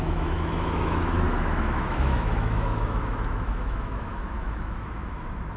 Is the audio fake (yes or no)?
yes